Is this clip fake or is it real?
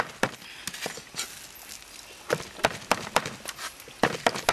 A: real